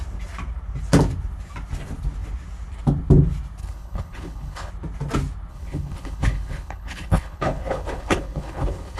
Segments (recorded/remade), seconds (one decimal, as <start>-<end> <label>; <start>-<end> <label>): 0.0-3.6 recorded; 3.6-4.7 remade; 4.7-5.5 recorded; 5.5-9.0 remade